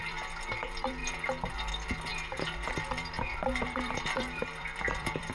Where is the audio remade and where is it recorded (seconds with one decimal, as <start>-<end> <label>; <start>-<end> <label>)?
0.0-1.0 remade; 1.0-1.7 recorded; 1.7-5.3 remade